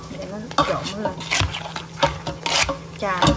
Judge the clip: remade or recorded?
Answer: recorded